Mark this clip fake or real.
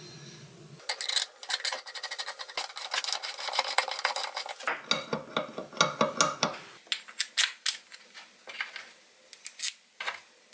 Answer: real